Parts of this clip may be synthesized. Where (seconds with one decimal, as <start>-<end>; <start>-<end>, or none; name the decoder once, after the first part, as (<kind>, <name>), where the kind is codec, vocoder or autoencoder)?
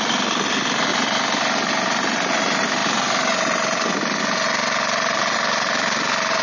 0.9-1.7 (vocoder, BigVGAN v2)